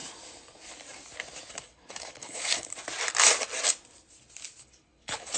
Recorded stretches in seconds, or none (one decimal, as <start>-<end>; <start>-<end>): 0.0-1.5; 2.7-4.6